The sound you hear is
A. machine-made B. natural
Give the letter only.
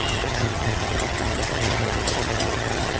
A